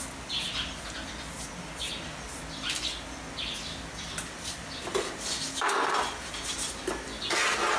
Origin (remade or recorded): recorded